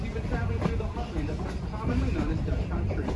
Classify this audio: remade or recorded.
recorded